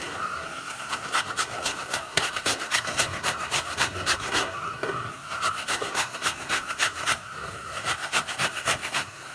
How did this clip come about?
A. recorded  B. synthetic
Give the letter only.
B